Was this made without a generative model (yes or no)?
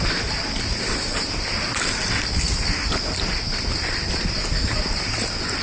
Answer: yes